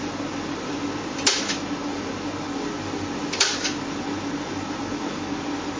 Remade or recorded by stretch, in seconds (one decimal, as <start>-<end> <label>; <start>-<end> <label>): 0.0-5.8 recorded